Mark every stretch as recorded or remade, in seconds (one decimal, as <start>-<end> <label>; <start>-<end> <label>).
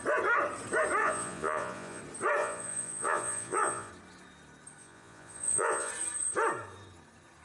0.0-1.0 recorded; 1.0-2.0 remade; 2.0-2.4 recorded; 2.4-3.9 remade; 3.9-4.8 recorded; 4.8-5.9 remade; 5.9-7.4 recorded